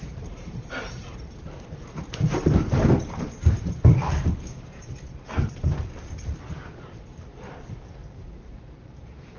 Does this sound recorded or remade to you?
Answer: remade